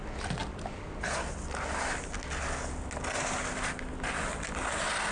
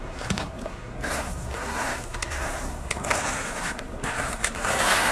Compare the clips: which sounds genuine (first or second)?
first